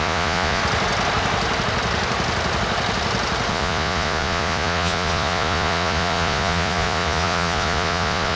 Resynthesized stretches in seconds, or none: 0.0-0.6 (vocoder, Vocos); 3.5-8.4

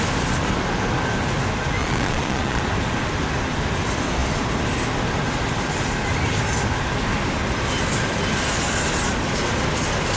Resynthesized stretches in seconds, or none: 1.8-2.6 (vocoder, Vocos)

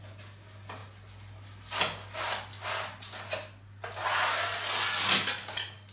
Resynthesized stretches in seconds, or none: none

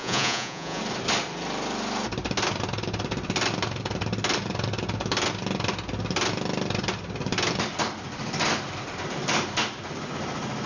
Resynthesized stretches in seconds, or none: 0.0-0.8 (vocoder, Vocos)